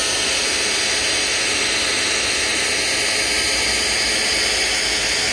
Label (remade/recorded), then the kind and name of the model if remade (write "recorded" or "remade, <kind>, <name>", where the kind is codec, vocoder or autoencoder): recorded